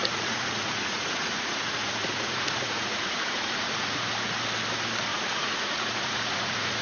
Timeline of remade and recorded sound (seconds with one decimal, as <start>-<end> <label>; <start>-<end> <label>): 0.0-4.1 remade; 4.1-5.1 recorded; 5.1-6.8 remade